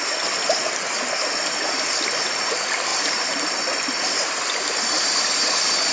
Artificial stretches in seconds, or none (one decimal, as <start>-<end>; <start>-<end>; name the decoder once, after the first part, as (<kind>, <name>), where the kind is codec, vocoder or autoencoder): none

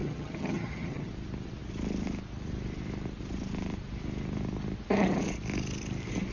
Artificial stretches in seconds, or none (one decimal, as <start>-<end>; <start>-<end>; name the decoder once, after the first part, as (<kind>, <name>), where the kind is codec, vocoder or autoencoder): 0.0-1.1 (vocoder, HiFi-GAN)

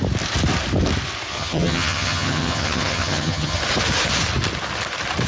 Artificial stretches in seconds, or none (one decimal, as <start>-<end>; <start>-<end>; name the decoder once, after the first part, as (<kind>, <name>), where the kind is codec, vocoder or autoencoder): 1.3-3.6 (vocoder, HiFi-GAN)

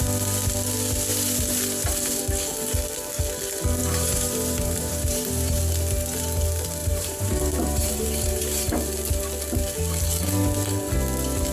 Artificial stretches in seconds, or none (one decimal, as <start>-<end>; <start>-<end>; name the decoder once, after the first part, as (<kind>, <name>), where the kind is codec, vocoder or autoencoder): 1.1-2.2 (vocoder, BigVGAN v2); 3.8-5.6; 6.8-8.7

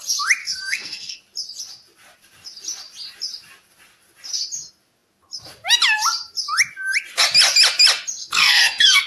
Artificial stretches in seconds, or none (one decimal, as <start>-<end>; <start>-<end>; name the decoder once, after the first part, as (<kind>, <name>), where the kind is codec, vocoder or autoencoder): 0.4-1.2 (codec, SNAC); 8.2-9.1

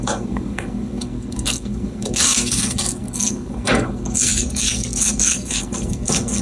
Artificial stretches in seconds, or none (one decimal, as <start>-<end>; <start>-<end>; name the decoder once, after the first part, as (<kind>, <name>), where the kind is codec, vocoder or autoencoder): 0.0-6.4 (codec, SNAC)

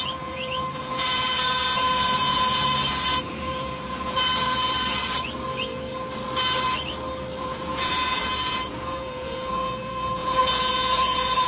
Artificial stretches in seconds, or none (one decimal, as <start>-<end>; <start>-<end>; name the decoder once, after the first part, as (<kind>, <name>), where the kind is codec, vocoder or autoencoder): 0.0-2.6 (vocoder, Vocos); 3.2-4.3; 7.4-11.5